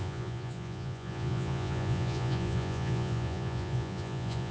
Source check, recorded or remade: remade